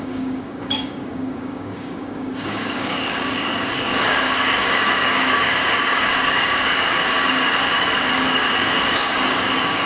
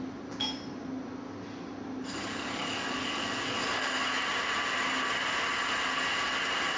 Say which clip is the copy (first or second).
first